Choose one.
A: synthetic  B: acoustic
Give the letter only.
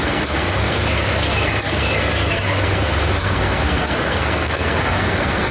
A